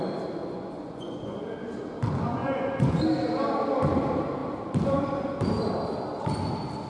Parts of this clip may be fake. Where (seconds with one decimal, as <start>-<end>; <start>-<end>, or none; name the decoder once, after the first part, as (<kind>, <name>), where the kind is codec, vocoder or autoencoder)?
0.4-1.4 (vocoder, Vocos); 2.4-3.0